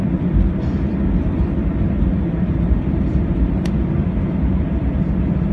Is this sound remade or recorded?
remade